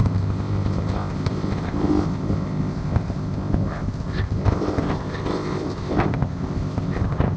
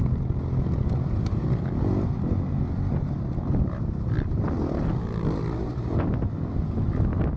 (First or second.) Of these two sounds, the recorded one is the second